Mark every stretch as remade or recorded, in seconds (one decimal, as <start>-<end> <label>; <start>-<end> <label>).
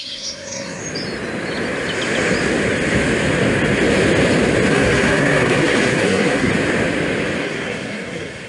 0.0-0.8 remade; 0.8-4.7 recorded; 4.7-6.5 remade; 6.5-7.4 recorded; 7.4-8.5 remade